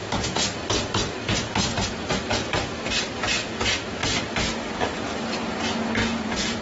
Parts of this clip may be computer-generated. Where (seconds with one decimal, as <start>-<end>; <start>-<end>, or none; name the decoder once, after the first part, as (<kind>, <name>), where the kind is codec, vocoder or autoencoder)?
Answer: 6.0-6.6 (vocoder, Vocos)